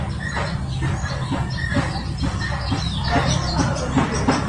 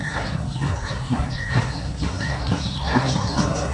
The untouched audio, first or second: first